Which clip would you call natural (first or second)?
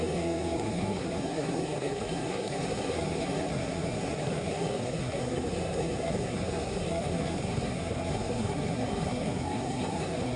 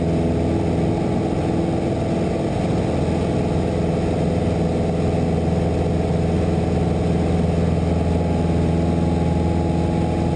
second